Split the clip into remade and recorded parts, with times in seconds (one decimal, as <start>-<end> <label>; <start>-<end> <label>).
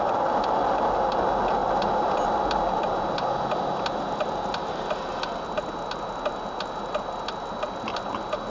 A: 0.0-8.5 recorded